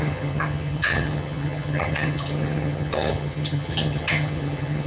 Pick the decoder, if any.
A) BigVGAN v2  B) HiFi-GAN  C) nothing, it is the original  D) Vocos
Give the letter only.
B